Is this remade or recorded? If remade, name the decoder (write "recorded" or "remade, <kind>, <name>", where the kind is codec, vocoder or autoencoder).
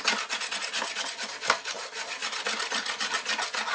recorded